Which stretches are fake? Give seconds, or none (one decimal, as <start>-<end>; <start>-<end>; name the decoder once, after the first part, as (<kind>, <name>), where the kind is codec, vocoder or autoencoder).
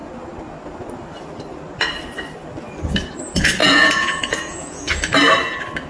3.6-4.9 (vocoder, Vocos)